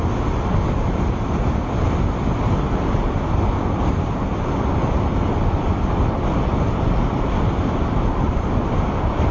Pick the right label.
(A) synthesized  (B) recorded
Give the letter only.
B